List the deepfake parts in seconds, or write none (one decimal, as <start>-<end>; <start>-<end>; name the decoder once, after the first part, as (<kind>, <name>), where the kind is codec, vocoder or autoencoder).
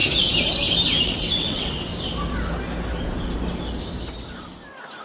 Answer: 1.0-1.9 (vocoder, WaveNeXt)